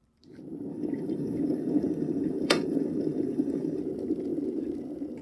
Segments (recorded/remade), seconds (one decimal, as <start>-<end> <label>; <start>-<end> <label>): 0.0-0.7 recorded; 0.7-3.8 remade; 3.8-5.2 recorded